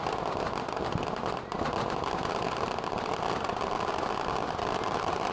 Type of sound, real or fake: real